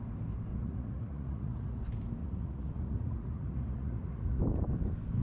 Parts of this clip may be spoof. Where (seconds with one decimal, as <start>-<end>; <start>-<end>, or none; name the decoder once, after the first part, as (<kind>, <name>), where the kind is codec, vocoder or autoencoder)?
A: 0.5-1.8 (vocoder, Vocos); 2.2-4.4